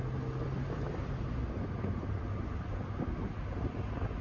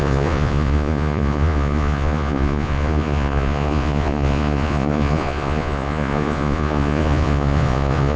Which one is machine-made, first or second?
second